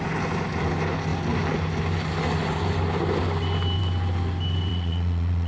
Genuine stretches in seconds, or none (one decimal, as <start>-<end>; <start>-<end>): 0.0-4.7